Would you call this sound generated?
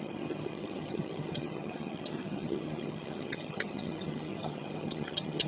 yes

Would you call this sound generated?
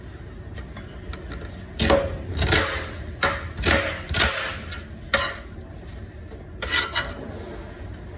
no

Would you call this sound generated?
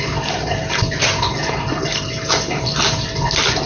no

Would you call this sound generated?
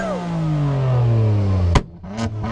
no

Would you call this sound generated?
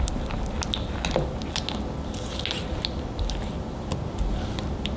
no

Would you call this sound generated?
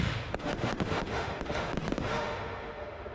yes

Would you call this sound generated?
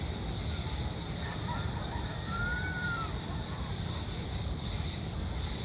yes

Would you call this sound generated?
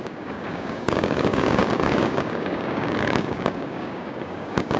yes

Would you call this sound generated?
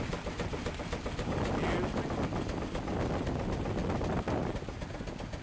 no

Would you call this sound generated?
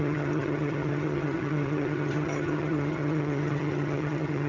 yes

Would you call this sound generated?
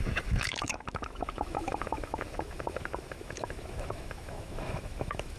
yes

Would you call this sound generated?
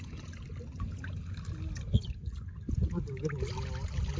no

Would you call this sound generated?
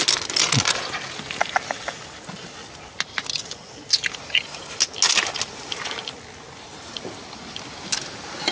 no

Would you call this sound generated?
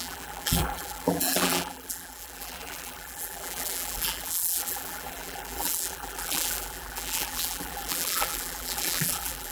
yes